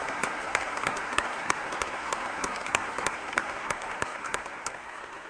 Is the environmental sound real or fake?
fake